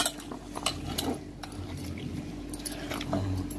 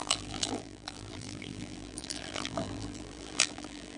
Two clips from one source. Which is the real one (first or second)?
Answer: first